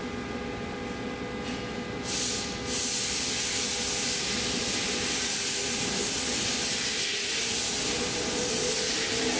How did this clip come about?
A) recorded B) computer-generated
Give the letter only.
A